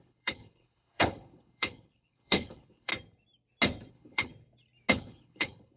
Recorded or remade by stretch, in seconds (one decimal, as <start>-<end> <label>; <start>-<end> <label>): 0.0-2.9 remade; 2.9-3.9 recorded; 3.9-4.3 remade; 4.3-4.9 recorded; 4.9-5.8 remade